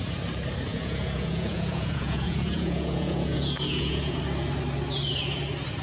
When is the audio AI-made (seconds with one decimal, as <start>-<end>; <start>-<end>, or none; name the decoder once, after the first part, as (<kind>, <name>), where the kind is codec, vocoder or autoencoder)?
0.7-4.2 (vocoder, Vocos)